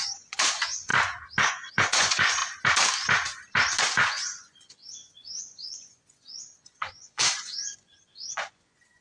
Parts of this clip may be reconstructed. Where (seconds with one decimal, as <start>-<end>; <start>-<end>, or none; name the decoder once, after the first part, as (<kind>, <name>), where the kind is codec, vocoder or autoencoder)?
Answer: 0.0-0.9 (vocoder, Vocos); 1.5-2.4; 3.8-9.0